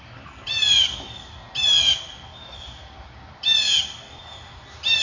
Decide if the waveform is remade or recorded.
remade